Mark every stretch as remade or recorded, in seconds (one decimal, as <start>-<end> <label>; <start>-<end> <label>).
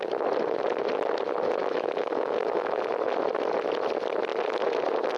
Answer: 0.0-1.6 recorded; 1.6-2.8 remade; 2.8-5.2 recorded